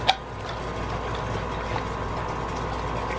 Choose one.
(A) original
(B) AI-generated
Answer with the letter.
A